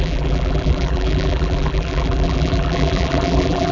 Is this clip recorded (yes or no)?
no